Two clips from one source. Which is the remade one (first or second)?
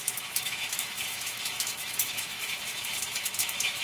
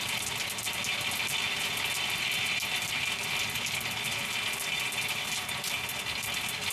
first